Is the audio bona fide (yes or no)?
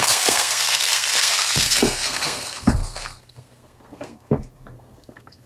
no